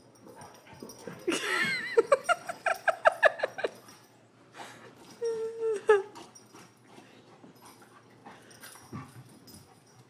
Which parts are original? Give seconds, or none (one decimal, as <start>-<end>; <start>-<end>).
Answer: 0.0-1.0; 1.6-3.9; 7.0-10.1